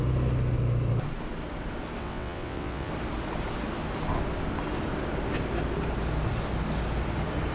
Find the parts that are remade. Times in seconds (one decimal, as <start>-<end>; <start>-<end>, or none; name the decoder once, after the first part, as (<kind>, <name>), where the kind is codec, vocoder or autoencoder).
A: 2.0-2.9 (vocoder, WaveNeXt)